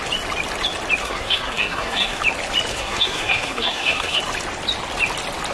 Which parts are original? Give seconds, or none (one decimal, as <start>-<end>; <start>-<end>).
0.0-1.0; 2.2-2.7; 4.2-5.5